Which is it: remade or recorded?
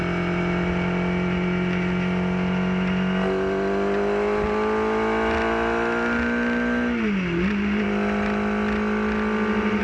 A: recorded